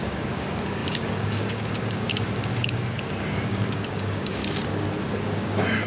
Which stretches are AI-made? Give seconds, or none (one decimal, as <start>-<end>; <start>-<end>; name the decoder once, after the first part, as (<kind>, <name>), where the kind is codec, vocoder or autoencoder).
0.0-4.4 (codec, DAC); 5.0-5.9